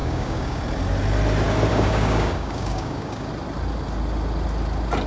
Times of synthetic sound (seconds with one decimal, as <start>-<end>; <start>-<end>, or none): 0.0-0.6; 1.7-3.3